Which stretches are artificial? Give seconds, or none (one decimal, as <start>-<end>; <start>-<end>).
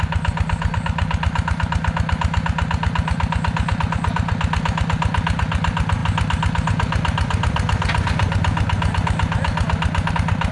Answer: none